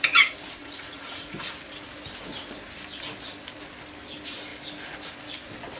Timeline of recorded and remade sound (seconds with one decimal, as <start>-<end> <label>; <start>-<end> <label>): 0.0-0.6 recorded; 0.6-1.5 remade; 1.5-5.8 recorded

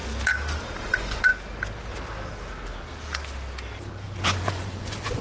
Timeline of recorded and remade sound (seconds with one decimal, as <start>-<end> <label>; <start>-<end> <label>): 0.0-0.8 recorded; 0.8-1.3 remade; 1.3-4.2 recorded; 4.2-5.2 remade

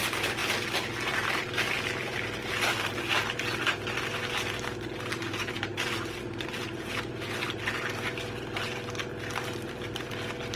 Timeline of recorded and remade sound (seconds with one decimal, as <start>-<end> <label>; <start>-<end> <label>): 0.0-10.6 recorded

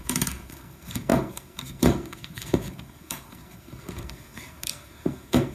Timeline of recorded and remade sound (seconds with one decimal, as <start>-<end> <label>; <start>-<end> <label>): 0.0-5.5 remade

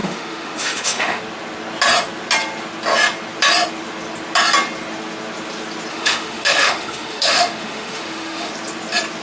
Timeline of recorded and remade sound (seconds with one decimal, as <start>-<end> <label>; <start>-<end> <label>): 0.0-1.2 remade; 1.2-5.9 recorded; 5.9-8.5 remade; 8.5-9.2 recorded

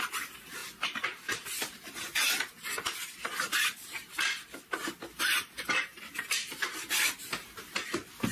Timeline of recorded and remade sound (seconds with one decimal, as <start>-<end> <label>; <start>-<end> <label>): 0.0-0.6 remade; 0.6-5.5 recorded; 5.5-8.3 remade